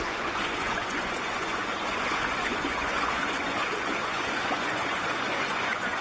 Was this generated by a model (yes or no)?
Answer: yes